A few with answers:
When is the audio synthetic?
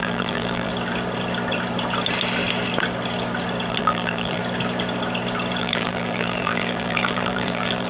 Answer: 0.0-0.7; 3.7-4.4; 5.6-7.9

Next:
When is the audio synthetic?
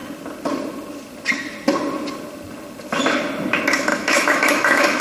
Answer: 3.9-5.0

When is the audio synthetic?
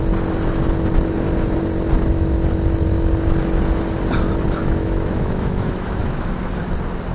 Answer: 4.6-6.5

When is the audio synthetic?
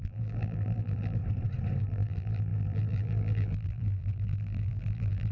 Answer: 0.0-1.2; 1.8-5.3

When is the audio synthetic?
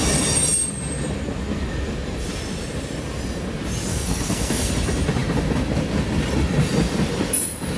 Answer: 3.9-4.7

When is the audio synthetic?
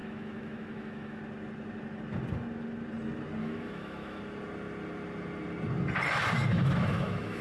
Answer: 0.0-1.2; 3.4-4.2; 6.5-7.4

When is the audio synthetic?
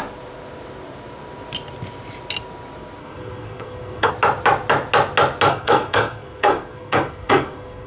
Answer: 3.0-4.1; 5.5-7.9